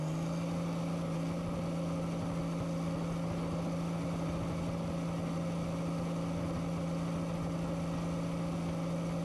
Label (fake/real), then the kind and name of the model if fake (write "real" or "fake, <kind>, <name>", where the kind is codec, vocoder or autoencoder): real